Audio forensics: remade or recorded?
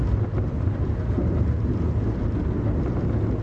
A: recorded